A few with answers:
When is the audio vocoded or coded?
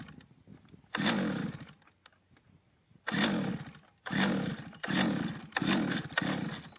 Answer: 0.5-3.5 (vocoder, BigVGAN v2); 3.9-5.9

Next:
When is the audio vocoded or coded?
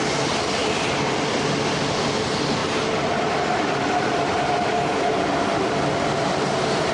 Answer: 4.3-5.1 (vocoder, BigVGAN v2)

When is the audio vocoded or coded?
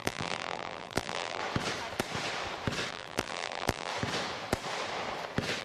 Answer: 0.0-1.4 (vocoder, BigVGAN v2); 2.9-3.9